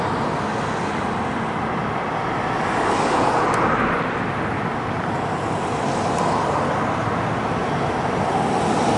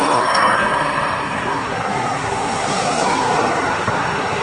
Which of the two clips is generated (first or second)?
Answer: second